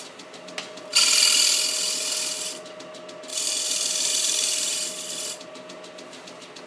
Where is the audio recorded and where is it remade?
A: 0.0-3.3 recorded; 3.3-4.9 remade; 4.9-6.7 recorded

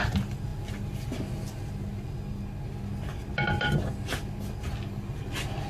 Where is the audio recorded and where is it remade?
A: 0.0-5.7 recorded

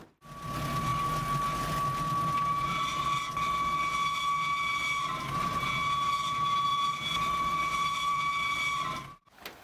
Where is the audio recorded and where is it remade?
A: 0.0-6.7 recorded; 6.7-8.2 remade; 8.2-9.6 recorded

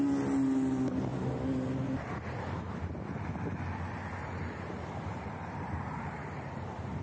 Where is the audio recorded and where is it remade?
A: 0.0-4.2 recorded; 4.2-7.0 remade

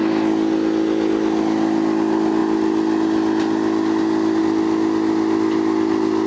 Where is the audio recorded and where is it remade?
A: 0.0-6.3 recorded

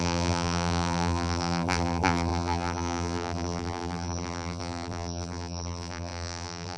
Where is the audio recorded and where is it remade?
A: 0.0-6.8 remade

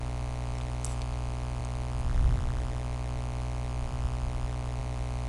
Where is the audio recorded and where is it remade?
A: 0.0-1.6 recorded; 1.6-4.8 remade; 4.8-5.3 recorded